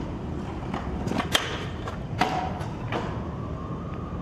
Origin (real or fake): fake